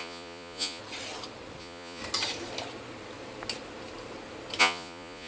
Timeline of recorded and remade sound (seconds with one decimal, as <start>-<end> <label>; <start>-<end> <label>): 0.0-0.8 remade; 0.8-1.6 recorded; 1.6-2.0 remade; 2.0-4.6 recorded; 4.6-5.3 remade